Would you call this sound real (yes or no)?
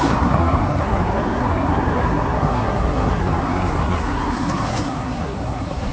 no